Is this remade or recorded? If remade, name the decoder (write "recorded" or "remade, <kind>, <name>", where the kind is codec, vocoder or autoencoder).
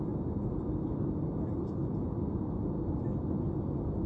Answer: recorded